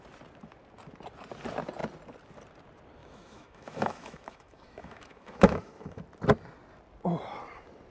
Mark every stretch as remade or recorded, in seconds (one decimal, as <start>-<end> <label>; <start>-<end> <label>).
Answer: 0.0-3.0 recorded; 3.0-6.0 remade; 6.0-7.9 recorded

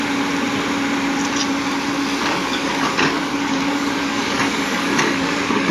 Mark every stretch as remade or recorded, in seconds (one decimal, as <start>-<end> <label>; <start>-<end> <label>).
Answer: 0.0-2.2 recorded; 2.2-5.7 remade

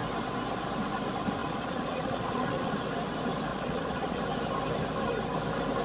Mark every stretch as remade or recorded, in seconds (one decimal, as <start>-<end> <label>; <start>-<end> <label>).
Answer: 0.0-1.4 recorded; 1.4-2.7 remade; 2.7-3.5 recorded; 3.5-4.2 remade; 4.2-5.8 recorded

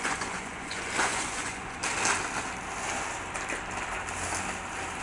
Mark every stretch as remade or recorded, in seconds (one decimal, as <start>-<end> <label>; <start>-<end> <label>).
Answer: 0.0-1.8 remade; 1.8-5.0 recorded

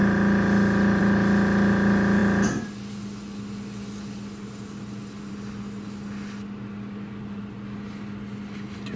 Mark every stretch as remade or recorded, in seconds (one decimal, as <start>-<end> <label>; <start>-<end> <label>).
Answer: 0.0-9.0 recorded

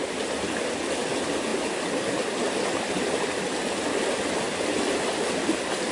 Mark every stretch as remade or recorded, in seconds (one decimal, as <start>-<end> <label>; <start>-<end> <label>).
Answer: 0.0-5.9 recorded